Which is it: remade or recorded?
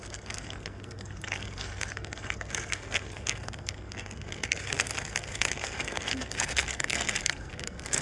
remade